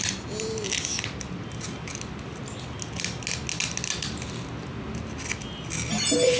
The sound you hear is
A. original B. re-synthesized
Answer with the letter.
A